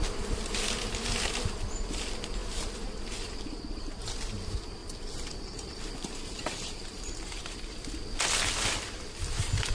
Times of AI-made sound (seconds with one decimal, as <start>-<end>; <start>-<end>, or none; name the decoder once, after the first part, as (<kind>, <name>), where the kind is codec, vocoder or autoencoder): 4.8-7.4 (vocoder, BigVGAN v2)